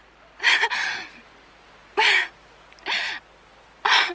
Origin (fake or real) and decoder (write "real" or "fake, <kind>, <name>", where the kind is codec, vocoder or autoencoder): real